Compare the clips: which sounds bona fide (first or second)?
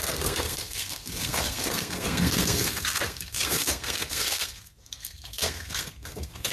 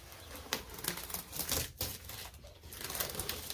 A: second